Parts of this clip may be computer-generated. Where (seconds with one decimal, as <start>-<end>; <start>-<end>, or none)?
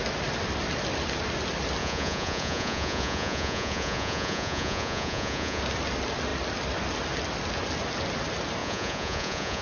1.8-5.6; 8.6-9.6